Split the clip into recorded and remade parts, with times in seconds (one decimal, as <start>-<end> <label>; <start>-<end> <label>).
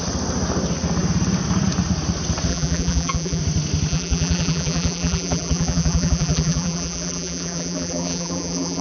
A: 0.0-2.5 recorded; 2.5-3.4 remade; 3.4-3.9 recorded; 3.9-8.8 remade